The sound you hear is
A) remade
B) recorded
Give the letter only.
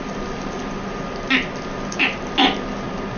B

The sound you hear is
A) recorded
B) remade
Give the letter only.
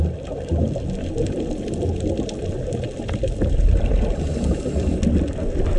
A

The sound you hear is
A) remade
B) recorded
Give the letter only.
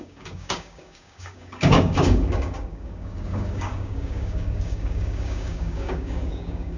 A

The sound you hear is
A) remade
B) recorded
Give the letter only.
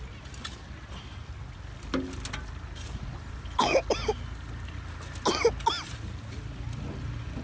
B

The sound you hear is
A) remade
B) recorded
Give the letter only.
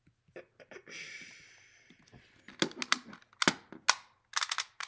B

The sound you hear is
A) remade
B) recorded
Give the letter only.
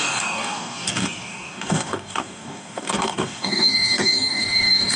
A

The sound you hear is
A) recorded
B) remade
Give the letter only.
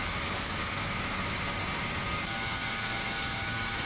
B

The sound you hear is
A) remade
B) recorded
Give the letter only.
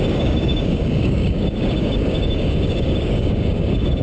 A